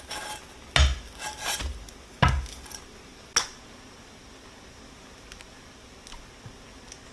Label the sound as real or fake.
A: real